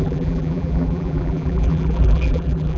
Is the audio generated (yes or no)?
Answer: yes